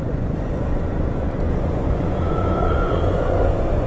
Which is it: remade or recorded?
remade